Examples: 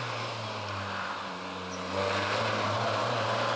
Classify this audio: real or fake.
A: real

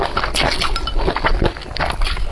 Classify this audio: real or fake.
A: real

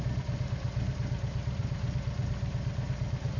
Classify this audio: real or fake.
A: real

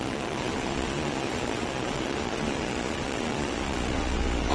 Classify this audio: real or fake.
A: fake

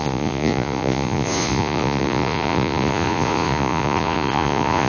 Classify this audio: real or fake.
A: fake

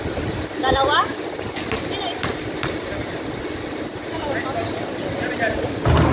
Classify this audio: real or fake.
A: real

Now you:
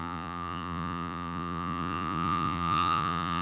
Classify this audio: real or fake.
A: fake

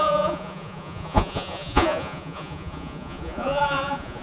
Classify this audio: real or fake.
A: fake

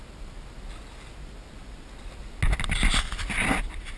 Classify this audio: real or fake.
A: real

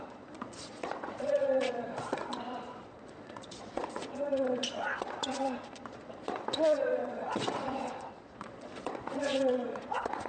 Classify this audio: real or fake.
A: fake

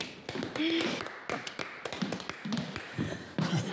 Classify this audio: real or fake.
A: real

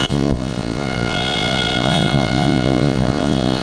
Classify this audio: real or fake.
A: fake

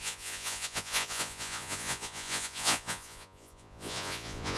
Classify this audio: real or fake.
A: fake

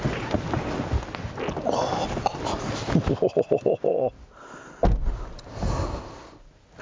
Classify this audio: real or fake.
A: real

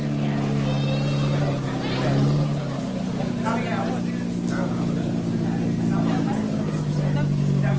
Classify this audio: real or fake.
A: real